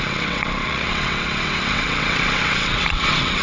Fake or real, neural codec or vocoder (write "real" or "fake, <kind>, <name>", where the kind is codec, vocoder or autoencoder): fake, vocoder, WaveNeXt